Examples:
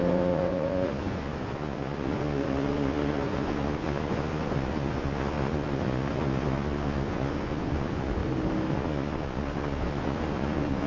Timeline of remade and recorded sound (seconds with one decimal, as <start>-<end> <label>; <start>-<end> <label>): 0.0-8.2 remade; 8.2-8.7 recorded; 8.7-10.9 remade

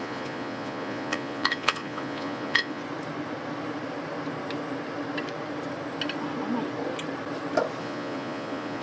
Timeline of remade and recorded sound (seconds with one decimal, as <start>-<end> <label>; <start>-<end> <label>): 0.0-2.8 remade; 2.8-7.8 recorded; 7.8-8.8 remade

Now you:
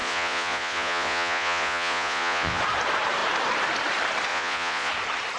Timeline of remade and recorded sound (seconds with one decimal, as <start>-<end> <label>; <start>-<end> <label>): 0.0-2.6 remade; 2.6-4.3 recorded; 4.3-4.9 remade; 4.9-5.4 recorded

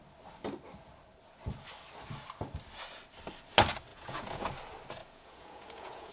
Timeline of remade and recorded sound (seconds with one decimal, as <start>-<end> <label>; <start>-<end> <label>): 0.0-3.9 recorded; 3.9-4.5 remade; 4.5-5.0 recorded; 5.0-6.1 remade

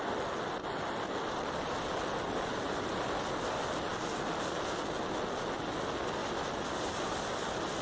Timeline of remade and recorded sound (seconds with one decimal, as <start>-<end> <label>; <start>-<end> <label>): 0.0-7.8 recorded

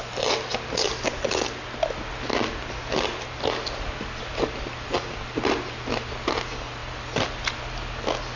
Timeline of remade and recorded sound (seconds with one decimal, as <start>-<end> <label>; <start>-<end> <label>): 0.0-8.4 recorded

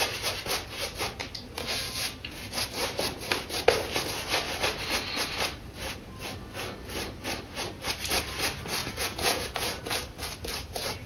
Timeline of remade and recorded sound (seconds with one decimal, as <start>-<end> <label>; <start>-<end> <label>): 0.0-8.8 recorded; 8.8-9.8 remade; 9.8-11.1 recorded